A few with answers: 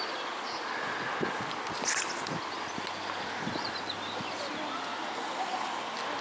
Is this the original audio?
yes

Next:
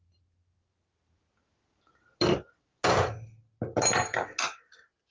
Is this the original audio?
yes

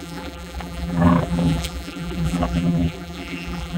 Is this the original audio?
no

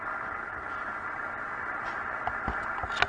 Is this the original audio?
yes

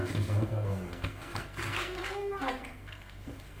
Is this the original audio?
no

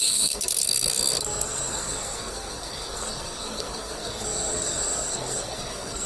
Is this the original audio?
no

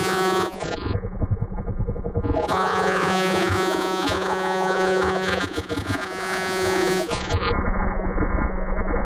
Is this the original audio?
no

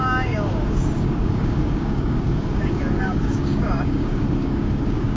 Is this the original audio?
no